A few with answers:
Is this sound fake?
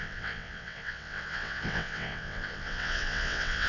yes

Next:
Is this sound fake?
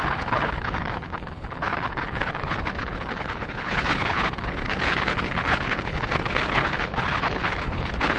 yes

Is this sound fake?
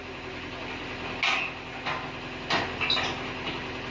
no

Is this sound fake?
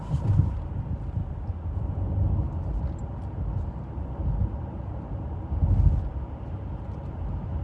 no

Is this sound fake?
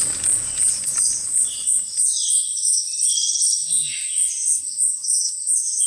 no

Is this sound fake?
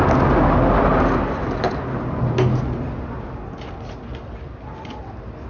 no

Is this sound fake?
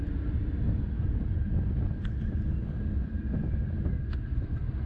no